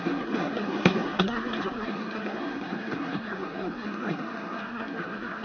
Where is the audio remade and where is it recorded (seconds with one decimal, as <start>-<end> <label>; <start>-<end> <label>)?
0.0-5.4 remade